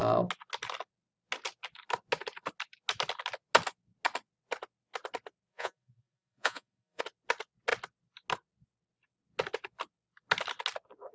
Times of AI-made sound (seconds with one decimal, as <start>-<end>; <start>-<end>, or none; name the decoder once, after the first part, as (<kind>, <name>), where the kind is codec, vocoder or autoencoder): 5.5-7.0 (vocoder, Vocos)

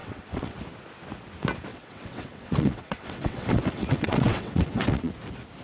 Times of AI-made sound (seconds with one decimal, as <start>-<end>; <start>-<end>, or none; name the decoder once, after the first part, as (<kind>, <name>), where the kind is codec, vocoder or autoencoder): 0.0-0.6 (vocoder, WaveNeXt); 1.7-5.1

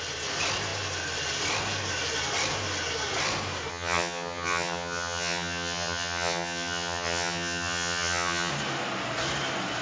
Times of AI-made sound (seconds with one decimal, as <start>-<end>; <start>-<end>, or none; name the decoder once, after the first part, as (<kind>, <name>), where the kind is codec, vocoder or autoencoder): 3.7-8.5 (vocoder, HiFi-GAN)

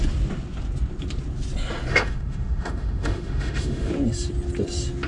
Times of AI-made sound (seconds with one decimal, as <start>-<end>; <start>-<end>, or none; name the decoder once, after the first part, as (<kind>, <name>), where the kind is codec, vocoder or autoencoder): 1.9-3.9 (autoencoder, DAC-VAE)

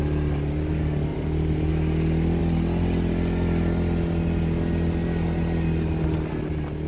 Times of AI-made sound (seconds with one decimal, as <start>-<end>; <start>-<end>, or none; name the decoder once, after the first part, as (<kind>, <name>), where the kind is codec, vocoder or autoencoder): 1.1-1.7 (vocoder, BigVGAN v2)

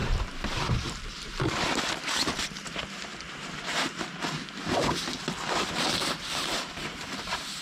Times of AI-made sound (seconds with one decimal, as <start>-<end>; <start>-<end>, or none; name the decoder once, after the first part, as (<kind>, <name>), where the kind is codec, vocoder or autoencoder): 0.0-1.8 (vocoder, BigVGAN v2); 5.9-7.6

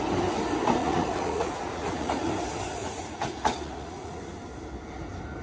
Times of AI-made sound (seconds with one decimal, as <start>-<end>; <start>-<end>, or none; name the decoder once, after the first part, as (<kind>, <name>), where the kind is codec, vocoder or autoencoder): 0.8-2.3 (vocoder, Vocos); 2.8-4.2